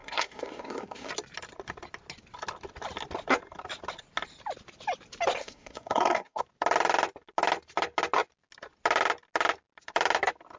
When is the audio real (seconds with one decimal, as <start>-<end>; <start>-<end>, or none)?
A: 1.1-5.4; 6.4-10.6